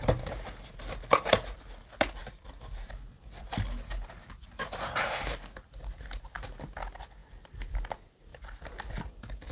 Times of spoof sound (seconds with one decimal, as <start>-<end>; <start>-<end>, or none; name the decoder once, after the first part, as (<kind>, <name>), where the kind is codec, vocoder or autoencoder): 7.2-7.8 (vocoder, BigVGAN v2)